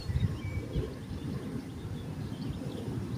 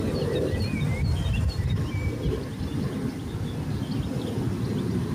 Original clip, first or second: second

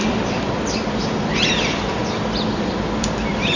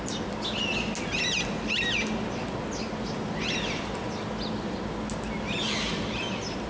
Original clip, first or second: second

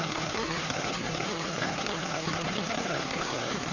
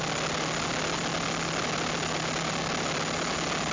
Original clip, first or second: second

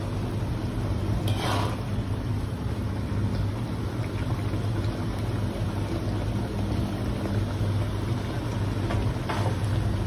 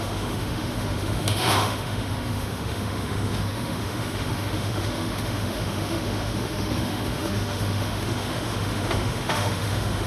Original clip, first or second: first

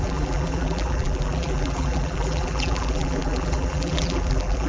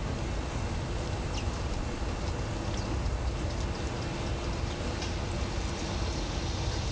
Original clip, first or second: second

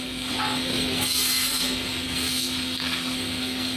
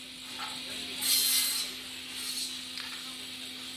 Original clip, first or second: second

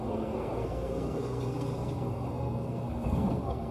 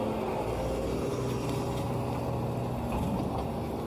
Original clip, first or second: second